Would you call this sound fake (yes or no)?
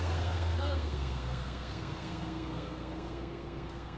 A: yes